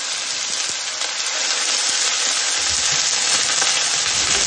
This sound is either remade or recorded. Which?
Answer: recorded